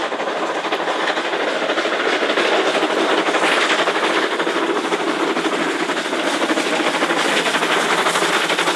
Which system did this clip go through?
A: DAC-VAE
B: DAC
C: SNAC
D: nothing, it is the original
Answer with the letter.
D